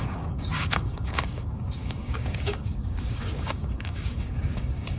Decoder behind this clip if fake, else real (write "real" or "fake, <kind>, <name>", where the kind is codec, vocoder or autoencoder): fake, codec, DAC